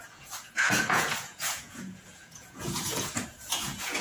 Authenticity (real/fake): fake